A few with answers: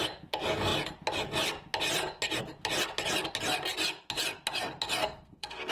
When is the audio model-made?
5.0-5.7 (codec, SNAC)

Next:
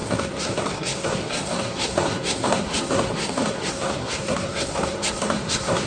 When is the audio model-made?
0.0-5.9 (codec, SNAC)

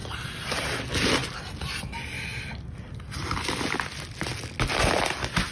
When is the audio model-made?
none

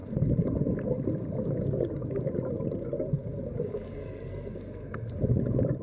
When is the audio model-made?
4.0-5.1 (codec, SNAC)